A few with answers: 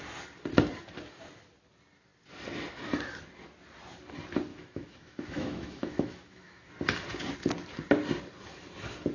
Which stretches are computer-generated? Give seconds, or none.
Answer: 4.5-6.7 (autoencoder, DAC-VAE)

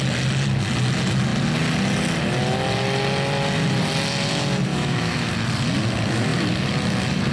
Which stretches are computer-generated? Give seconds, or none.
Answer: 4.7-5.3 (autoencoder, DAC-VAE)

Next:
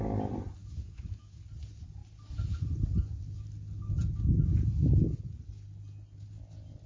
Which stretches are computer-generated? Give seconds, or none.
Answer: 0.6-1.4 (autoencoder, DAC-VAE)